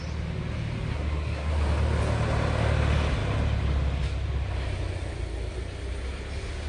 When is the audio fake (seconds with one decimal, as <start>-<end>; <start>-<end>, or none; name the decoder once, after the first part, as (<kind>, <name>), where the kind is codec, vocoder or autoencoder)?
0.9-1.5 (codec, SNAC)